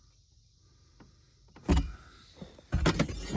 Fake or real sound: real